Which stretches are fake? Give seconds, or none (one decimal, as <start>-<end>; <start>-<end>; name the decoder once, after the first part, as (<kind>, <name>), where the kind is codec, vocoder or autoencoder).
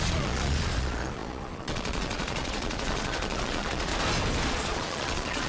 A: 0.0-3.9 (vocoder, Vocos); 4.5-5.5